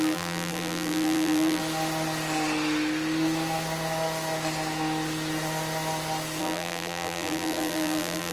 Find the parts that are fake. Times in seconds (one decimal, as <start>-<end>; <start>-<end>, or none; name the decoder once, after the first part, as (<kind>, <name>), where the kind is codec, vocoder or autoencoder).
0.0-1.6 (vocoder, BigVGAN v2); 6.4-8.3